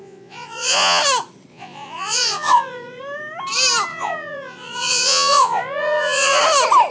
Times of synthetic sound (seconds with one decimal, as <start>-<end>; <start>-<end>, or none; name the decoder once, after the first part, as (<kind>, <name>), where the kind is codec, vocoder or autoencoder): 0.0-1.0 (vocoder, Vocos); 1.5-3.0; 3.9-6.4